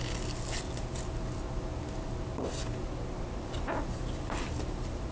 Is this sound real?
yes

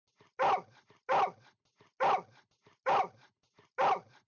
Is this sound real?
yes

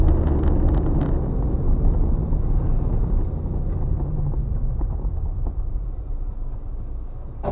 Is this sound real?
yes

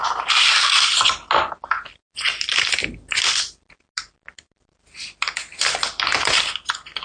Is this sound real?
yes